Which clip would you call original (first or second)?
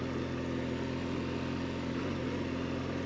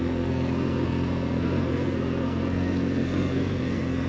first